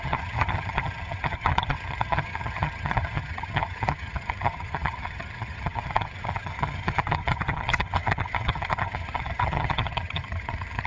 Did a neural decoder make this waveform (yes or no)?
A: yes